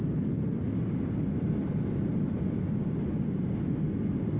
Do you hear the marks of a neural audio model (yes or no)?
no